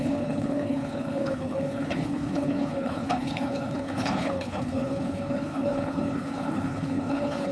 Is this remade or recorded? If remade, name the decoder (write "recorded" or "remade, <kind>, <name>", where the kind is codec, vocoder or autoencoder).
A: remade, codec, HILCodec